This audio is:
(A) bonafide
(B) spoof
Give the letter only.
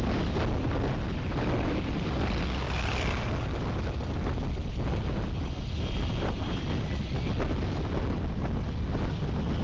A